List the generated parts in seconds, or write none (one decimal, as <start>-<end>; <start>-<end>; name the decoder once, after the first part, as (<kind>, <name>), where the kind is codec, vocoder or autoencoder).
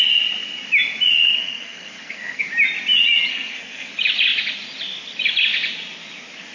1.3-2.5 (codec, SNAC); 3.3-3.9